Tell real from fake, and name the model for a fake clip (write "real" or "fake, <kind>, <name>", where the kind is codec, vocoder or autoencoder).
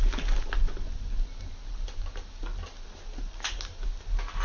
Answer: real